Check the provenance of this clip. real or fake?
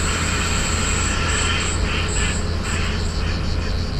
real